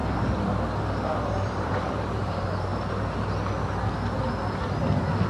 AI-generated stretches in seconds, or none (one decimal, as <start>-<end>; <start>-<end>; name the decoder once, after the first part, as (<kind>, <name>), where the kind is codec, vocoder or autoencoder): 0.8-2.7 (vocoder, BigVGAN v2)